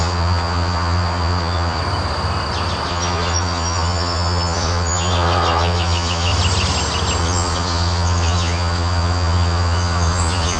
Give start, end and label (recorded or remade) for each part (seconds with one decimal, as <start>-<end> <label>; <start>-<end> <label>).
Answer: 0.0-1.8 remade; 1.8-2.9 recorded; 2.9-6.3 remade; 6.3-7.2 recorded; 7.2-10.6 remade